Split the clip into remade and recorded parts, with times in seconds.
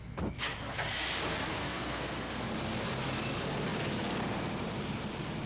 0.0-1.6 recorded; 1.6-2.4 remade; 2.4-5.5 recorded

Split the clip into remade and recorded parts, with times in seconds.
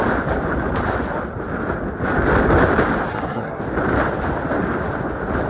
0.0-3.1 recorded; 3.1-3.6 remade; 3.6-5.5 recorded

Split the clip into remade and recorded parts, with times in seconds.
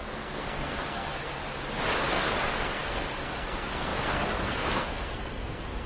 0.0-1.4 remade; 1.4-2.1 recorded; 2.1-5.9 remade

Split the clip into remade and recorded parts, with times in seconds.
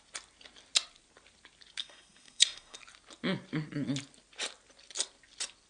0.0-1.8 recorded; 1.8-2.8 remade; 2.8-5.7 recorded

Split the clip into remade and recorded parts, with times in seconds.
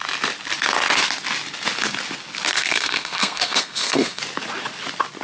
0.0-2.5 recorded; 2.5-4.2 remade; 4.2-5.2 recorded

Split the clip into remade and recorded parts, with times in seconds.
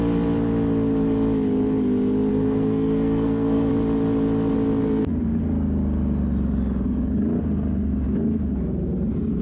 0.0-2.3 recorded; 2.3-3.7 remade; 3.7-9.4 recorded